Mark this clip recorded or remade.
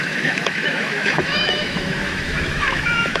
remade